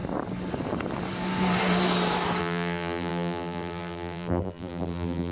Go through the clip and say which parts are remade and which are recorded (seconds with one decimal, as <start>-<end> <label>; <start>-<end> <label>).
0.0-2.4 recorded; 2.4-5.3 remade